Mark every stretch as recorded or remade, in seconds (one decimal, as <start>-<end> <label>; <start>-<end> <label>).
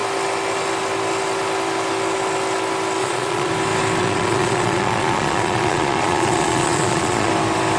0.0-3.0 recorded; 3.0-3.5 remade; 3.5-4.0 recorded; 4.0-7.3 remade; 7.3-7.8 recorded